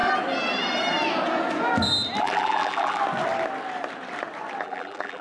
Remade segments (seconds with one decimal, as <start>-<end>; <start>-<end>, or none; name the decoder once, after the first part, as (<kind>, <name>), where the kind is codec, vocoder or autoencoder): 2.2-3.0 (vocoder, BigVGAN v2); 4.6-5.2